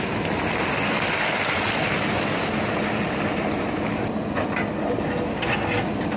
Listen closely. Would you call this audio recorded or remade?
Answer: recorded